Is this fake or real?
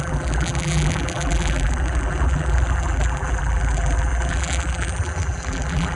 fake